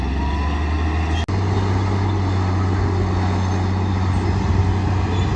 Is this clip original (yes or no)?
yes